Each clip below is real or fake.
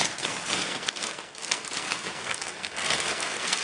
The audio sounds fake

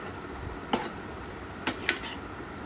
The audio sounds real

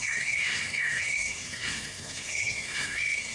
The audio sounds fake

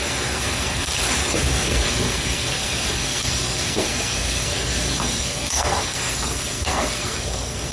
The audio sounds fake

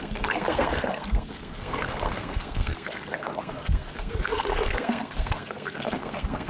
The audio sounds fake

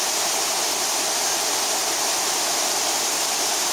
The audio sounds real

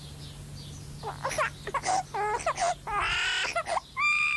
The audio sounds real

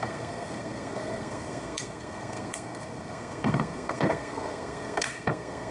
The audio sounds fake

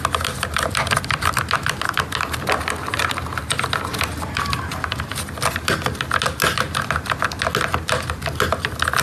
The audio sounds real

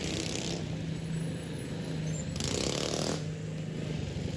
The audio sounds real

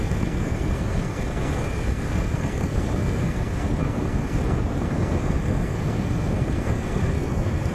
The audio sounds fake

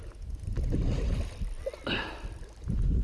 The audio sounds real